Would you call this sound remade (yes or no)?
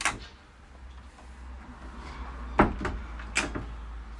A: no